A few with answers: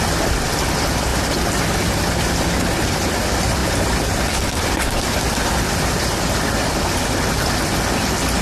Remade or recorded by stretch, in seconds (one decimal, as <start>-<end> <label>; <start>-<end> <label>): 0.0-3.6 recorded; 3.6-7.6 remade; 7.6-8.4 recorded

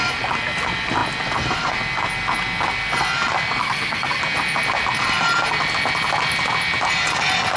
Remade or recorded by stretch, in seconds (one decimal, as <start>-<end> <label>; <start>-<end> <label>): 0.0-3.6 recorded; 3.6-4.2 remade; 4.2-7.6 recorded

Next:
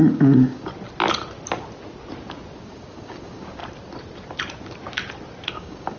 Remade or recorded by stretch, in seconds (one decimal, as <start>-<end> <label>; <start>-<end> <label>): 0.0-0.7 remade; 0.7-2.6 recorded; 2.6-3.6 remade; 3.6-5.5 recorded; 5.5-6.0 remade

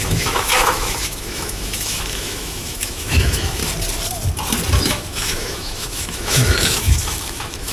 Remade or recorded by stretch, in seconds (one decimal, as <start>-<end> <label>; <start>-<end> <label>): 0.0-3.6 remade; 3.6-4.8 recorded; 4.8-7.7 remade